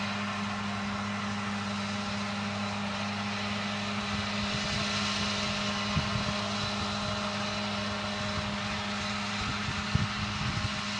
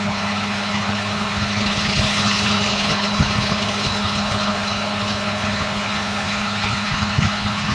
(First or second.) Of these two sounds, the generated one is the second